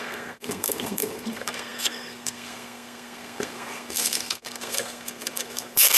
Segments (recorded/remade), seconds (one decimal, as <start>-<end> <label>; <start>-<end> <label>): 0.0-6.0 remade